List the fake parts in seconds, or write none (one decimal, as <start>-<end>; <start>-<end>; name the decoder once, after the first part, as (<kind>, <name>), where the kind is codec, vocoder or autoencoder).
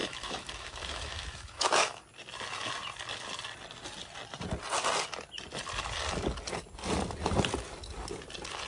0.0-2.0 (autoencoder, DAC-VAE)